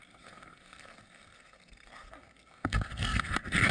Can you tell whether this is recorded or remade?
remade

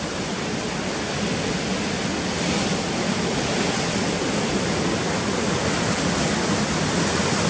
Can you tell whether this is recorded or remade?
recorded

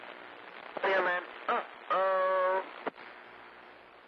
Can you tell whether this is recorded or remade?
recorded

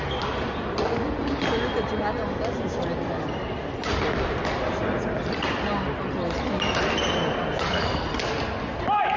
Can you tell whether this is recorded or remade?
recorded